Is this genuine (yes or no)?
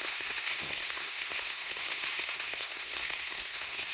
no